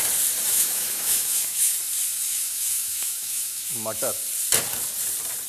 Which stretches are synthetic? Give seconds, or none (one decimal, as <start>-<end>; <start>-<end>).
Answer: 0.5-1.7; 2.3-4.2